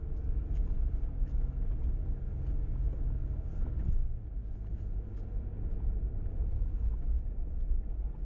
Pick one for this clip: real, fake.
real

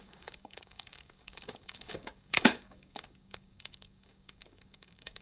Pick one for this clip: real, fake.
fake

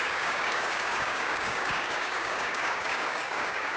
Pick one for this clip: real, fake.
fake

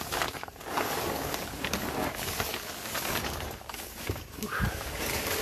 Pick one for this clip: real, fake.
fake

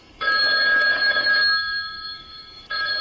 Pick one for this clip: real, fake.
fake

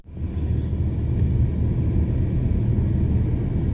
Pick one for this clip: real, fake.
real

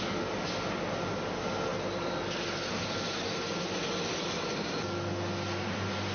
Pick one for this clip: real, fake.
real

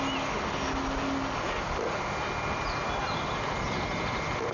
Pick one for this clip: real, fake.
real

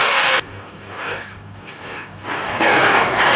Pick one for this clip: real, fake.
fake